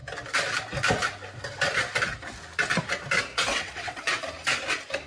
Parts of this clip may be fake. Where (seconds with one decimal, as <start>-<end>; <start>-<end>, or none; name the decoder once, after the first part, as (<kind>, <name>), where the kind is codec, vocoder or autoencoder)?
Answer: 3.5-4.2 (vocoder, WaveNeXt)